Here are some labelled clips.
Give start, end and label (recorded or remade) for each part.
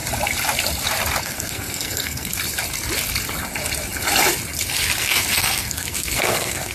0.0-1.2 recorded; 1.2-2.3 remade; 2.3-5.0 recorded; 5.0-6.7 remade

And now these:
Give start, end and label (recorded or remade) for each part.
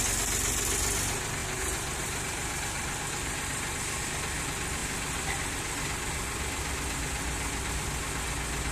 0.0-1.4 recorded; 1.4-4.0 remade; 4.0-8.7 recorded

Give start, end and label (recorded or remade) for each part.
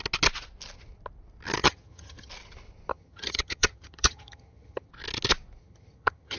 0.0-1.6 recorded; 1.6-2.3 remade; 2.3-2.9 recorded; 2.9-4.9 remade; 4.9-5.6 recorded; 5.6-6.4 remade